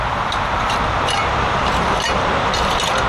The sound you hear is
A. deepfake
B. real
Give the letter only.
B